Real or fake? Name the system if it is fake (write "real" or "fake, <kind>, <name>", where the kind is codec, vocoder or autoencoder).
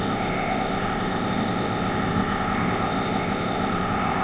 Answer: fake, codec, ZipCodec